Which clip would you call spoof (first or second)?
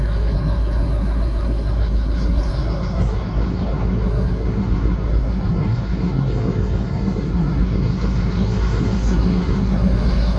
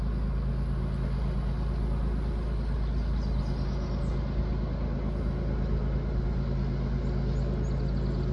first